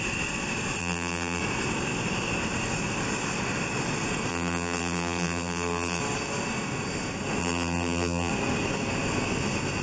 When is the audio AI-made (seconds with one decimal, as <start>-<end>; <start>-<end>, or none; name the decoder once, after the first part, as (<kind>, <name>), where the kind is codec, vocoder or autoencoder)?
0.8-1.4 (vocoder, BigVGAN v2); 4.3-6.0; 7.4-8.3